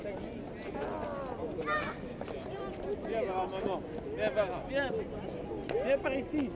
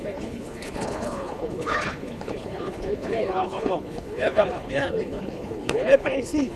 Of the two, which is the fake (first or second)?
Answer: second